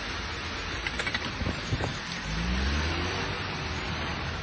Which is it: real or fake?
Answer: real